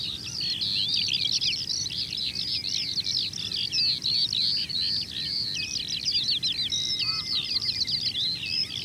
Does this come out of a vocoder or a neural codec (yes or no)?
no